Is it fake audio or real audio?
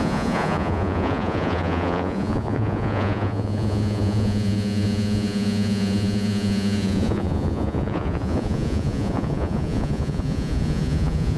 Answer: fake